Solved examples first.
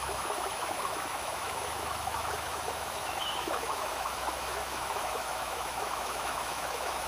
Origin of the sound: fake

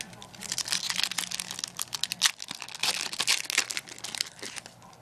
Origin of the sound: real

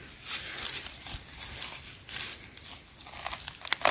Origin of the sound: real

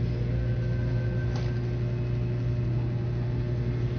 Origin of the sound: real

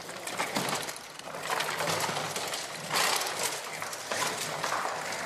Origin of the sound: real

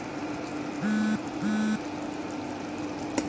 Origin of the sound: real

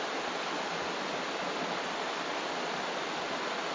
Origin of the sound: real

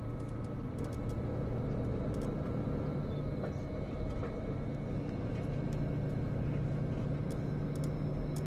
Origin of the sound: real